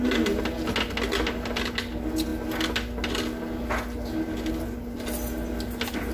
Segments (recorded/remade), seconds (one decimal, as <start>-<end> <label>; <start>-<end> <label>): 0.0-6.1 recorded